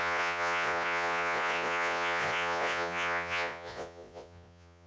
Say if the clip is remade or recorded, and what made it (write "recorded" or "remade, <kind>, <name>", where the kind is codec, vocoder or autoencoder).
remade, vocoder, Vocos